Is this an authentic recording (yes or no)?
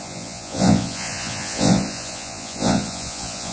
no